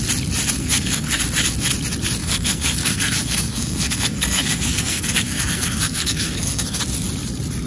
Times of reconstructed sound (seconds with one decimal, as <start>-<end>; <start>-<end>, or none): 0.6-1.2; 2.2-6.8